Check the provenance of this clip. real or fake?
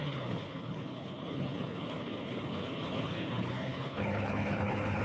fake